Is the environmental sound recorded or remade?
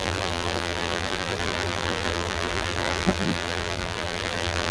remade